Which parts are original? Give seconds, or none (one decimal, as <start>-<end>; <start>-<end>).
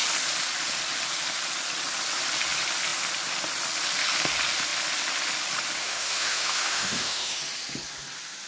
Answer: 0.0-5.8; 7.4-8.5